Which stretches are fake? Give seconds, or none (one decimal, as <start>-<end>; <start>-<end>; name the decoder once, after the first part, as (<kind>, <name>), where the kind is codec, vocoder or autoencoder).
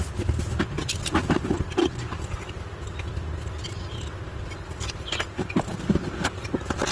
none